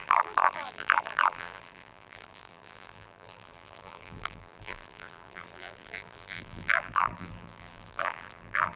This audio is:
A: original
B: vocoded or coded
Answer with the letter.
B